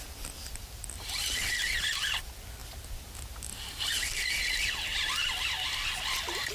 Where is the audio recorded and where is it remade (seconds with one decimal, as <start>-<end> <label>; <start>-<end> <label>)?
0.0-6.5 recorded